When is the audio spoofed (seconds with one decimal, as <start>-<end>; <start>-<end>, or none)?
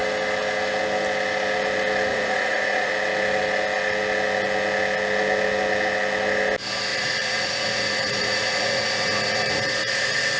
2.1-2.9; 6.9-10.4